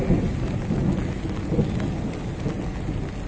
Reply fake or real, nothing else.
real